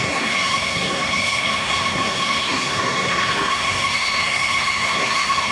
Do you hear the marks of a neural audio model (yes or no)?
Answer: yes